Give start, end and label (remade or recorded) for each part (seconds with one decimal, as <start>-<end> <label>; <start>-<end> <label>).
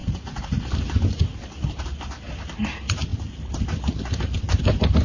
0.0-0.7 remade; 0.7-5.0 recorded